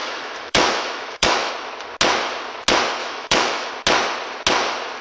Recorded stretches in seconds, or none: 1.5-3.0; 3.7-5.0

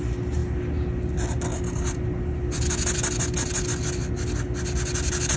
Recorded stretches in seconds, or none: 0.0-5.4

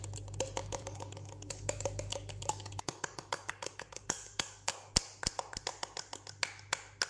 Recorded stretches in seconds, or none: 0.0-0.6; 4.9-7.1

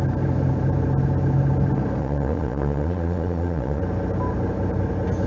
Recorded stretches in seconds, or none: 0.0-2.0; 3.8-5.3

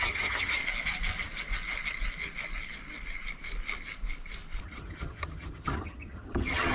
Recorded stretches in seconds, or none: 0.6-4.6

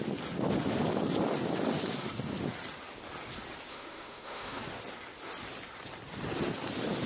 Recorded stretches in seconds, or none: 0.0-3.7; 4.6-7.1

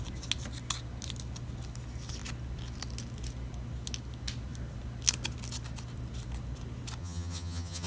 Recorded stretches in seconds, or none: 0.0-7.0

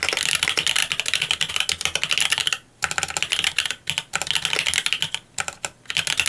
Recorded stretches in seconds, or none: 0.0-6.3